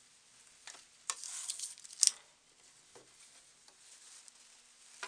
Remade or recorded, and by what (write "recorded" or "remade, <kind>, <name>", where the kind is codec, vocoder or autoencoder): recorded